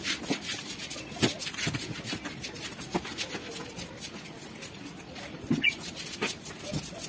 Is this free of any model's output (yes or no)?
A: yes